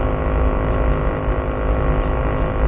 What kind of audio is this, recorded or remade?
recorded